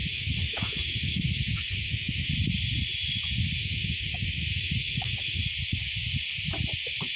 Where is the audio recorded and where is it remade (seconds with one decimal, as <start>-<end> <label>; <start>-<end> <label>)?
0.0-2.3 remade; 2.3-3.6 recorded; 3.6-5.4 remade; 5.4-7.2 recorded